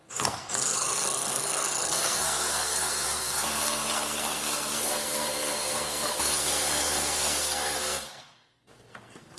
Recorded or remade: remade